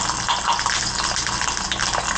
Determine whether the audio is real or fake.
real